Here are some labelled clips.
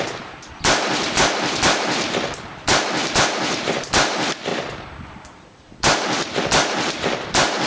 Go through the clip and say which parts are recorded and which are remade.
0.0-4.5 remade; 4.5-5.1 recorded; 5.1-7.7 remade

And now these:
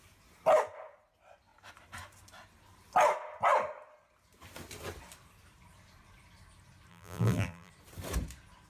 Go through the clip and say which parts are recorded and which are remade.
0.0-6.9 recorded; 6.9-7.7 remade; 7.7-8.7 recorded